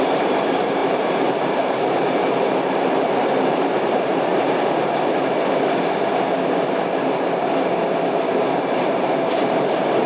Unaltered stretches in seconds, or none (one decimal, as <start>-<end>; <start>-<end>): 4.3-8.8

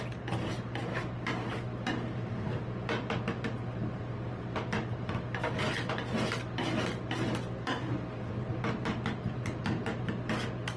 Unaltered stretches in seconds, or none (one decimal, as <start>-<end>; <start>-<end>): 0.0-10.8

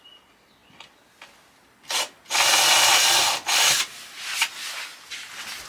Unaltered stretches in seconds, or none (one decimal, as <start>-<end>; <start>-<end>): 0.0-5.7

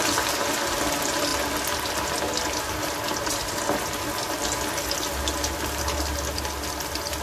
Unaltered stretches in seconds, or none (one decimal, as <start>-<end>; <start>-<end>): 0.0-7.2

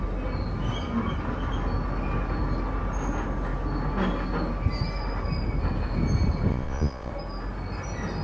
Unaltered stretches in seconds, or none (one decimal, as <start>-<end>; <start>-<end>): 0.0-6.5; 7.1-8.2